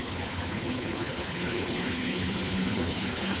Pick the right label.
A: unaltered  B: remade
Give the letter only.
B